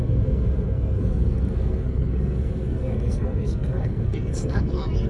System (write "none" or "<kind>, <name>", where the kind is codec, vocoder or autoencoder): codec, SNAC